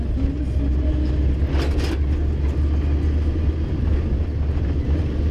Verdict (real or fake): real